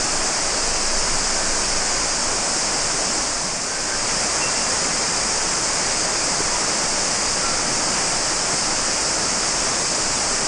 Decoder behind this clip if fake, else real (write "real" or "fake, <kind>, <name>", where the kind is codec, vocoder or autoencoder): real